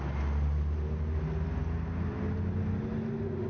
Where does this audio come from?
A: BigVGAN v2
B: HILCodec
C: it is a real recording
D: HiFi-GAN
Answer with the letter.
C